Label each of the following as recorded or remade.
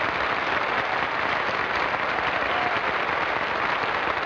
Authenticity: recorded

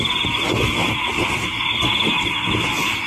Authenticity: recorded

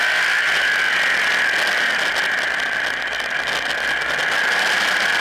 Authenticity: recorded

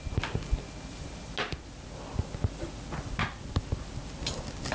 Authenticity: recorded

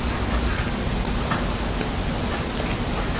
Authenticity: recorded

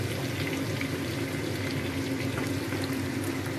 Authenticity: remade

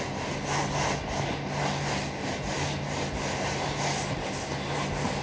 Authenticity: recorded